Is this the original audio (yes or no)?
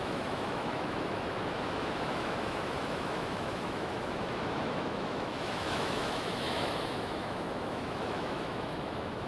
no